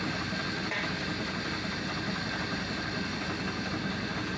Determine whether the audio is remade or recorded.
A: recorded